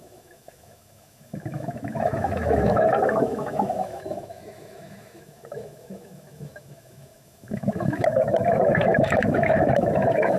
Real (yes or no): no